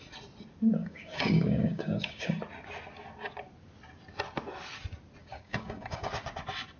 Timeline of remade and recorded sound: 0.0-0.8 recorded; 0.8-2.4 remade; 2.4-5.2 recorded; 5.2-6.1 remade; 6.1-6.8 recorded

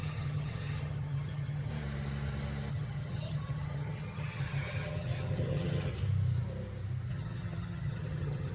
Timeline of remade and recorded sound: 0.0-1.7 remade; 1.7-2.7 recorded; 2.7-5.9 remade; 5.9-7.1 recorded; 7.1-8.5 remade

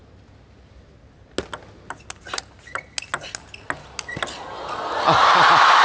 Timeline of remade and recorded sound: 0.0-5.8 recorded

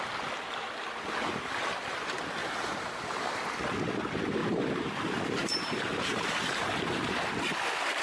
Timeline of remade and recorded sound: 0.0-2.4 recorded; 2.4-3.3 remade; 3.3-4.4 recorded; 4.4-4.9 remade; 4.9-5.4 recorded; 5.4-7.3 remade; 7.3-8.0 recorded

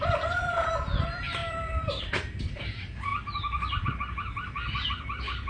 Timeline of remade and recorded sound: 0.0-3.1 remade; 3.1-4.8 recorded; 4.8-5.5 remade

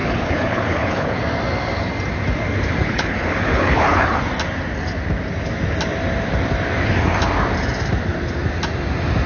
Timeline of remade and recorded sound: 0.0-1.2 remade; 1.2-2.8 recorded; 2.8-4.2 remade; 4.2-9.3 recorded